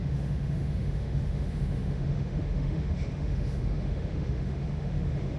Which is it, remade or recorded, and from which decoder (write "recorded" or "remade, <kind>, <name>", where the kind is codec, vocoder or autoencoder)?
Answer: remade, autoencoder, DAC-VAE